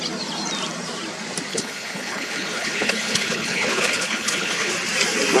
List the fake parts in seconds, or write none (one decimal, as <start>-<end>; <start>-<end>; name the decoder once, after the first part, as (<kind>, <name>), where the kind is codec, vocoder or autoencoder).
1.5-4.7 (codec, HILCodec)